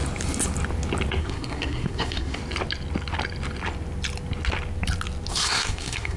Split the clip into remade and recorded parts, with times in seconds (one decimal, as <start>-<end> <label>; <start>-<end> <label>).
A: 0.0-1.2 recorded; 1.2-2.4 remade; 2.4-5.3 recorded; 5.3-6.2 remade